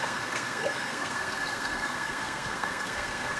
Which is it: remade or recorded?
remade